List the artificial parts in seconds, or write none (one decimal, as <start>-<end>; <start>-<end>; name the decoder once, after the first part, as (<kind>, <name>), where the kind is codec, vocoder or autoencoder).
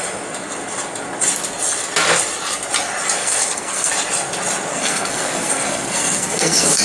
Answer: 3.2-3.9 (codec, SNAC); 4.7-6.8